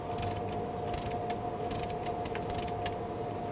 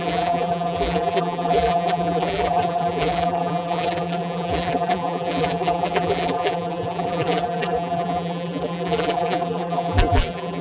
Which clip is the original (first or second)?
first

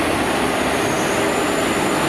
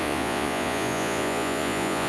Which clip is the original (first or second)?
first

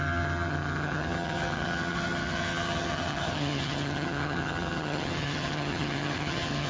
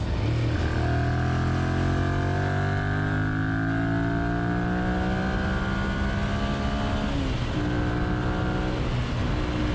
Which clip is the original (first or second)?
second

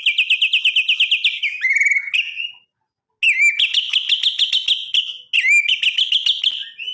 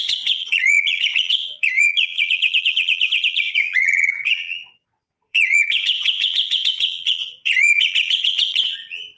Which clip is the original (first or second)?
first